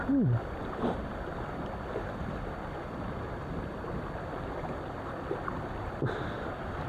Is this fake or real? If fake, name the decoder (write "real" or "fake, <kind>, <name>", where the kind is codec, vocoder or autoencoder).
real